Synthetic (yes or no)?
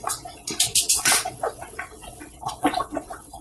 yes